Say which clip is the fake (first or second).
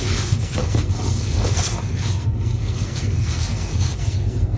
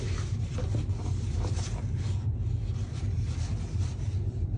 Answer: first